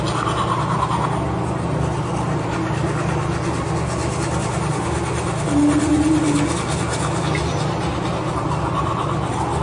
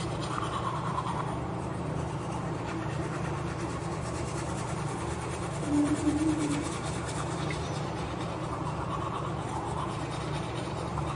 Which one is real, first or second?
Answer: first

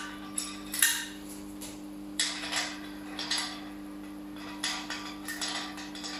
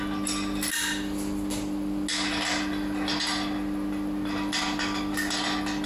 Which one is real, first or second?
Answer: second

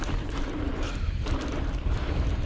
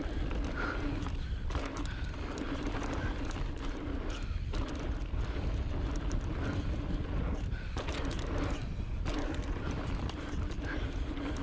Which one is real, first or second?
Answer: second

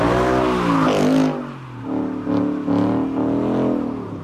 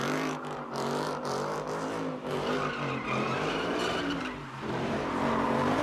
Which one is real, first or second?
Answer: first